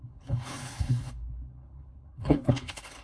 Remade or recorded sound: remade